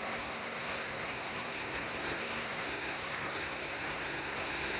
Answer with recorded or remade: remade